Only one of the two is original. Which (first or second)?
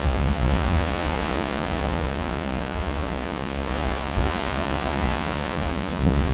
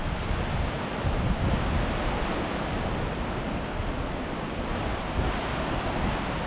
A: second